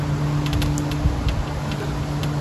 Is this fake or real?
real